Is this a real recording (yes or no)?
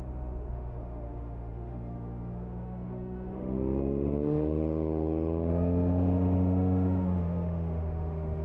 no